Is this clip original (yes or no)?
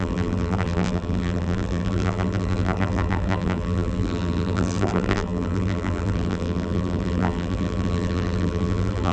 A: no